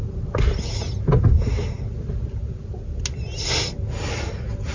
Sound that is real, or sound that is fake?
real